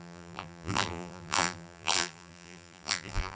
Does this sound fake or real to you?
fake